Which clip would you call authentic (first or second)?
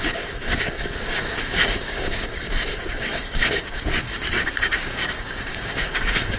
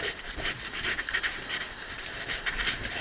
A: second